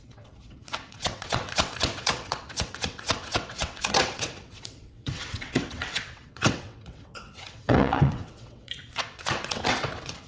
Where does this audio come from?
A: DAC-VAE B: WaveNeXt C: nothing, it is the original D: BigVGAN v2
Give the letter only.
B